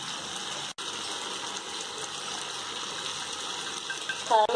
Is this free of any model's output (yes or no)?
yes